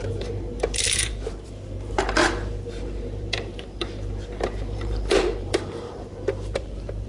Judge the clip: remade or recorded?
remade